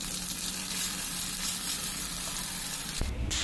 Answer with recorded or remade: remade